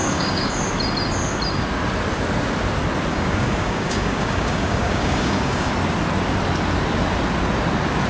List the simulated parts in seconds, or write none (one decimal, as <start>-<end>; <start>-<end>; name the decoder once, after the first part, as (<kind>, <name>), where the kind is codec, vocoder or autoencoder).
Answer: 0.0-0.5 (codec, DAC); 3.1-5.7